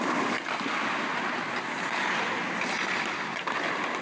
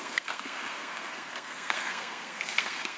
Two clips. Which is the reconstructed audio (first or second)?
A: second